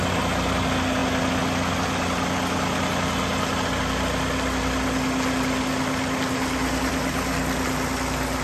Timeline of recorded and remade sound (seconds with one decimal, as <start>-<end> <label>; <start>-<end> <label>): 0.0-8.4 recorded